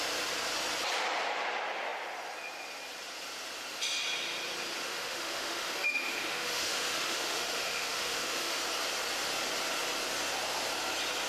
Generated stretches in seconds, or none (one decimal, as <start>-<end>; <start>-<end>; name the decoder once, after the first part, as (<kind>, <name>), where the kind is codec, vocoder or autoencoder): 4.8-8.6 (autoencoder, DAC-VAE)